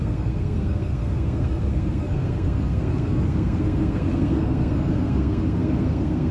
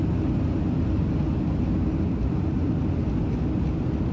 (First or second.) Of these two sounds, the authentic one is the second